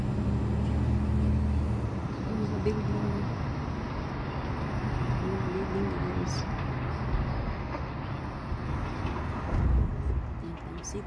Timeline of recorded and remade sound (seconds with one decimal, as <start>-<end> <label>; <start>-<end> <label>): 0.0-7.3 recorded; 7.3-7.9 remade; 7.9-11.1 recorded